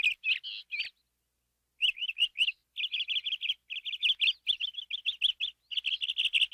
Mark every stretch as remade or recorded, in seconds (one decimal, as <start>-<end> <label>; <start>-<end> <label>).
0.0-6.5 recorded